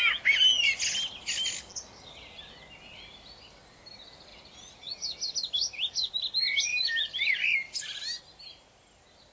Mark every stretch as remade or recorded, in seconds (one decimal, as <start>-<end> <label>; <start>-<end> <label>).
0.0-9.3 recorded